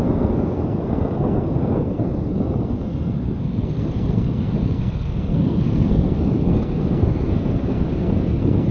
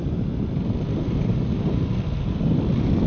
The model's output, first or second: first